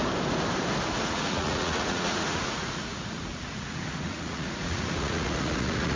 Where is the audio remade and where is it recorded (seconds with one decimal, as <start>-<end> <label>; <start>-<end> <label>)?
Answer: 0.0-1.0 recorded; 1.0-6.0 remade